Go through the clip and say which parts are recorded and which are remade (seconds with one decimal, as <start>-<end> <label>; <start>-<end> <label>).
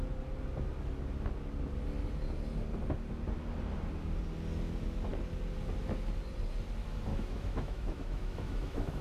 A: 0.0-7.1 recorded; 7.1-9.0 remade